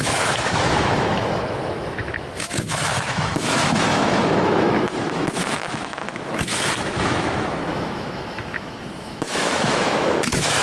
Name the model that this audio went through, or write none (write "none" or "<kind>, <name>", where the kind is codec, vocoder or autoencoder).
autoencoder, DAC-VAE